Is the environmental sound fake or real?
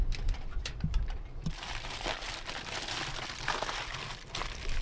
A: real